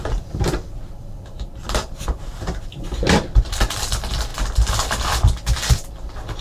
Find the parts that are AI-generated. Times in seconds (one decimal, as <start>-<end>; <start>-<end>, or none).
0.0-4.3